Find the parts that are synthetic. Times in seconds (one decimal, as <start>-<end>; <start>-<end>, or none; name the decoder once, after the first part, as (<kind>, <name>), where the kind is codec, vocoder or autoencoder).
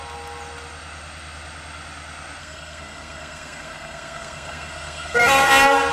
2.4-5.5 (codec, SNAC)